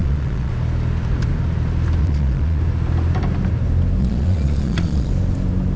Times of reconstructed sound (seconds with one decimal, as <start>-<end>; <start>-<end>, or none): 0.0-0.5; 2.0-2.6; 4.0-5.1